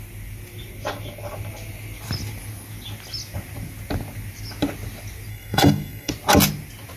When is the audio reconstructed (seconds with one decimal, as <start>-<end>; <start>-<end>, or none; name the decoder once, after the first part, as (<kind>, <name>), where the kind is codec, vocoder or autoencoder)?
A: 5.3-6.1 (codec, SNAC)